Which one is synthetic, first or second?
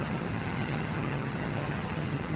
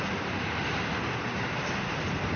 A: first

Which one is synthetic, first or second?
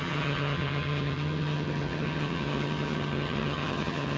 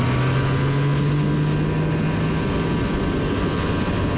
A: first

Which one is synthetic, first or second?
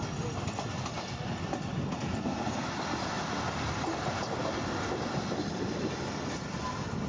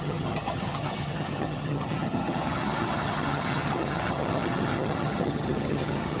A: second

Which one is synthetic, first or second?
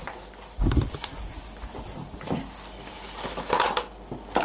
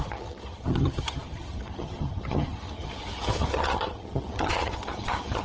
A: second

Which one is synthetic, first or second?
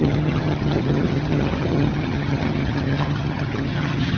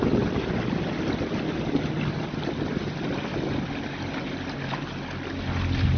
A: first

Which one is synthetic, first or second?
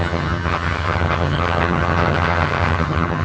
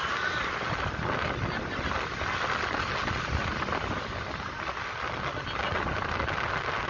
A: first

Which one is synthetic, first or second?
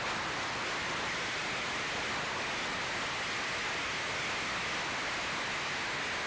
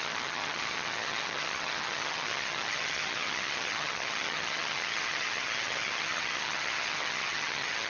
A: second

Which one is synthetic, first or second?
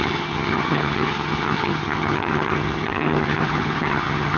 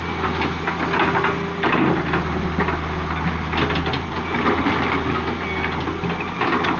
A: first